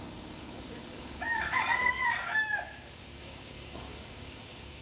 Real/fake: fake